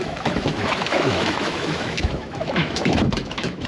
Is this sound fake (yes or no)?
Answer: yes